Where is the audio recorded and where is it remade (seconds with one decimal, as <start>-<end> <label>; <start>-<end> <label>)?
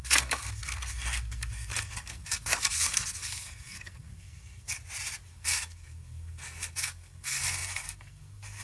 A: 0.0-4.8 remade; 4.8-5.3 recorded; 5.3-8.6 remade